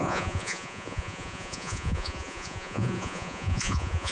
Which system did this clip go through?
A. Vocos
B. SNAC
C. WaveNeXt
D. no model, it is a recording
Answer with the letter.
A